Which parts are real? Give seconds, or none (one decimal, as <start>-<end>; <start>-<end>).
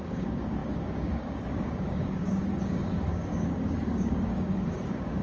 none